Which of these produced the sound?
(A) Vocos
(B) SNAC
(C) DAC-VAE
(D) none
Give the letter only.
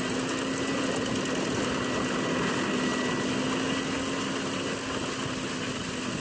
D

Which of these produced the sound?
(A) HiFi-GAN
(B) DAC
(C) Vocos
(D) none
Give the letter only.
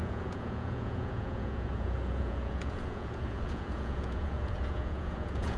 C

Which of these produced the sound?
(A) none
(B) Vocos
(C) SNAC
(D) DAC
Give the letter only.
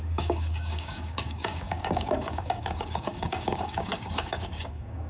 D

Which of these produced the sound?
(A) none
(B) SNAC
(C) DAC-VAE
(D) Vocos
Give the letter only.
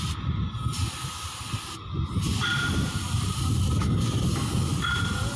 A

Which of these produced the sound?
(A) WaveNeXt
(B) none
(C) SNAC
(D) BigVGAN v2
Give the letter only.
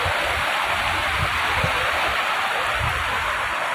B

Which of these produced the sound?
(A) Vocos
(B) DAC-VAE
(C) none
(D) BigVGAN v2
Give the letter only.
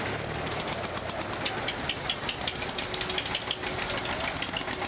C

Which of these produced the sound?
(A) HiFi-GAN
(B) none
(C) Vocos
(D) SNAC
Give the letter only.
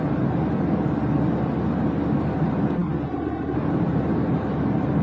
B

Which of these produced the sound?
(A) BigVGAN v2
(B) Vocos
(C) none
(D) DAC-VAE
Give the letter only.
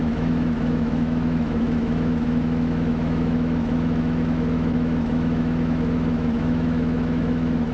D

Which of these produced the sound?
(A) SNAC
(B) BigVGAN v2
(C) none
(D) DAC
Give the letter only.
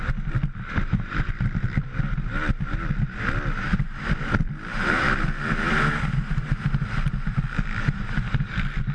C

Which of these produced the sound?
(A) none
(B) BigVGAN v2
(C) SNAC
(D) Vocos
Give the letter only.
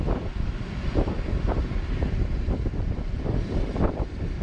B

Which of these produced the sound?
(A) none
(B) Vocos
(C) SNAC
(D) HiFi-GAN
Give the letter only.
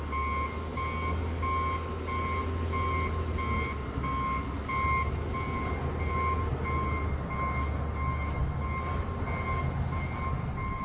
A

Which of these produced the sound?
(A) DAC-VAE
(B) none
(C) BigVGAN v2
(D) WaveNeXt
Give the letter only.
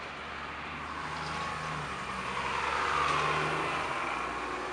B